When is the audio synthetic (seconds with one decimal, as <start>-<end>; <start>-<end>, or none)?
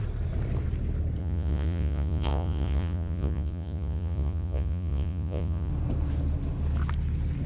1.2-5.7